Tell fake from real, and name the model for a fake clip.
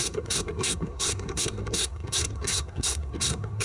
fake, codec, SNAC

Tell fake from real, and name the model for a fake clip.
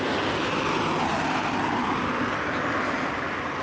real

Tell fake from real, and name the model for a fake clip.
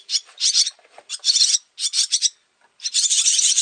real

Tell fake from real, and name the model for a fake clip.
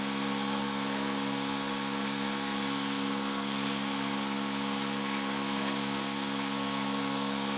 fake, codec, SNAC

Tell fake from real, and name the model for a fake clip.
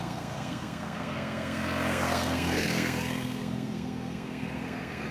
fake, codec, SNAC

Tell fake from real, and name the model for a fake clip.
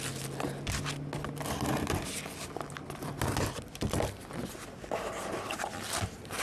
real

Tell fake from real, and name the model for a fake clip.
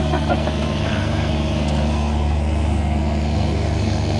fake, codec, SNAC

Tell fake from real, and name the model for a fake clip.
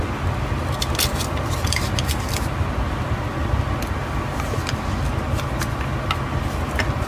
real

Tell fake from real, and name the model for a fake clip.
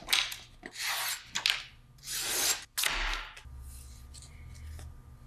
real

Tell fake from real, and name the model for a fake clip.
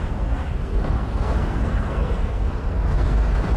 fake, codec, SNAC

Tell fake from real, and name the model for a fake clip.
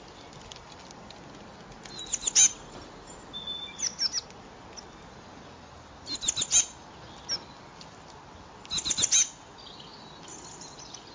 real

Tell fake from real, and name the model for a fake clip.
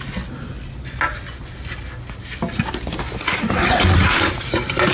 real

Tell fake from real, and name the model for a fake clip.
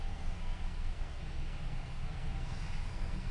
fake, codec, SNAC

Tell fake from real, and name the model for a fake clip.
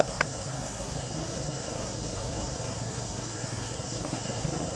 fake, codec, SNAC